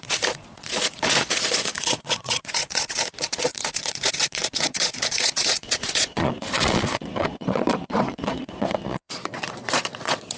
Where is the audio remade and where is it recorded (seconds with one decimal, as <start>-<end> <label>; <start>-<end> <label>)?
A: 0.0-10.4 remade